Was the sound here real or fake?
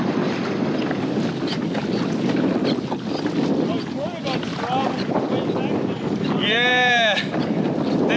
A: real